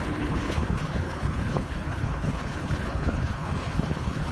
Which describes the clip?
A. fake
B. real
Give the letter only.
A